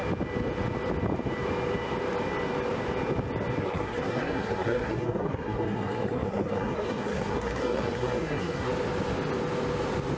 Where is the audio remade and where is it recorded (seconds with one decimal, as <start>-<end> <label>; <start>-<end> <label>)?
0.0-3.6 recorded; 3.6-8.7 remade; 8.7-10.2 recorded